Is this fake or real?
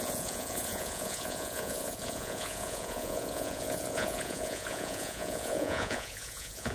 fake